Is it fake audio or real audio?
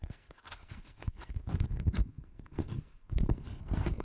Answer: fake